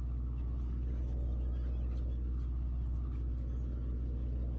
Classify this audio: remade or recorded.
recorded